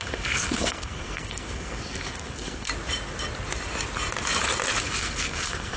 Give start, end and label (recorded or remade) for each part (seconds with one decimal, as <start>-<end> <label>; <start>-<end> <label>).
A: 0.0-2.7 remade; 2.7-4.8 recorded; 4.8-5.8 remade